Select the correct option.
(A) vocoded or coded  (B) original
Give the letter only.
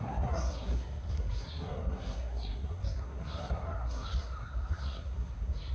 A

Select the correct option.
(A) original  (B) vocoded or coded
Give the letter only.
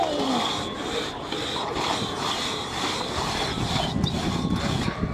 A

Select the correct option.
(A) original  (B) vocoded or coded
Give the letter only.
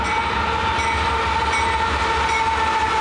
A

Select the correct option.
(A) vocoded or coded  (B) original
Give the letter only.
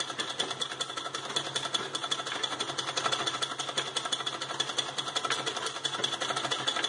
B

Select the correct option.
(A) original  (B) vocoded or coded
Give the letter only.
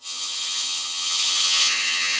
B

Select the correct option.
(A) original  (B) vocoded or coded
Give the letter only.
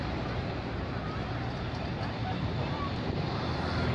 A